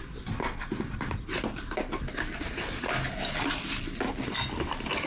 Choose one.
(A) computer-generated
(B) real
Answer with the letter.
B